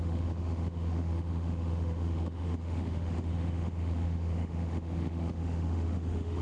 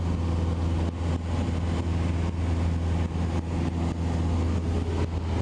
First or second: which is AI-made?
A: first